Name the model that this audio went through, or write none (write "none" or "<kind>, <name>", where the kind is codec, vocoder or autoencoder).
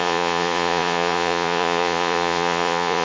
vocoder, Vocos